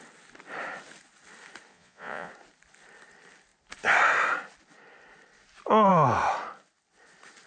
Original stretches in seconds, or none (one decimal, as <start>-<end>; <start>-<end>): 0.0-1.7; 2.3-7.5